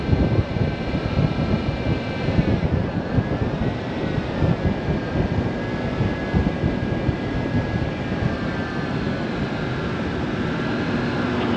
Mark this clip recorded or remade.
recorded